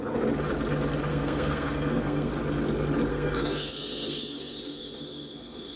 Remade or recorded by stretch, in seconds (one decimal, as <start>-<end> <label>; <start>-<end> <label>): 0.0-1.1 recorded; 1.1-2.3 remade; 2.3-3.1 recorded; 3.1-5.8 remade